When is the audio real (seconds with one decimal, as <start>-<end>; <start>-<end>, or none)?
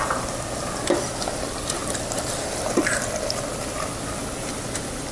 0.0-5.1